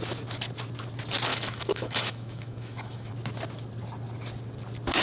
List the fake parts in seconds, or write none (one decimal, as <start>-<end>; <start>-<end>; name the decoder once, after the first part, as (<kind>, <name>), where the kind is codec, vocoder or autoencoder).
1.3-3.1 (autoencoder, DAC-VAE)